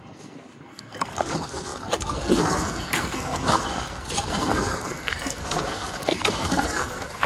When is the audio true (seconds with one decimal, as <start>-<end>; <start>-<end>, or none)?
none